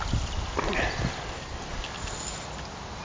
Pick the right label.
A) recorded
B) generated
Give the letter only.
A